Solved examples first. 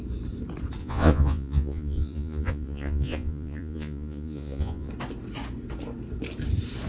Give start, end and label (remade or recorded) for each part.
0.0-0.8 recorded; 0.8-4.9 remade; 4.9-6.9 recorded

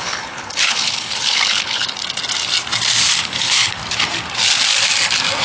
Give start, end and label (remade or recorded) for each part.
0.0-2.0 remade; 2.0-3.2 recorded; 3.2-3.8 remade; 3.8-5.4 recorded

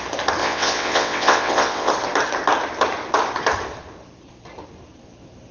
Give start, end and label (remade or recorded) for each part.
0.0-0.4 recorded; 0.4-1.9 remade; 1.9-5.5 recorded

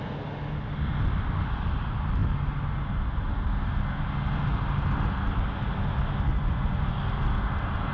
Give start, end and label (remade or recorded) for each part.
0.0-6.3 recorded; 6.3-7.0 remade; 7.0-7.9 recorded

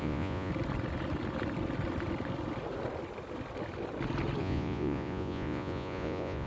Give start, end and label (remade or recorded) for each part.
0.0-0.5 remade; 0.5-4.4 recorded; 4.4-6.5 remade